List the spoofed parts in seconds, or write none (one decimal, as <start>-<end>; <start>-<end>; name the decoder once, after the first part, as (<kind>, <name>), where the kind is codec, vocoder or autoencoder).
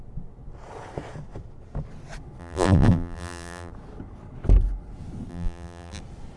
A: 2.4-3.7 (vocoder, BigVGAN v2); 5.3-6.0